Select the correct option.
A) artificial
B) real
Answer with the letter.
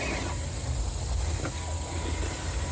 B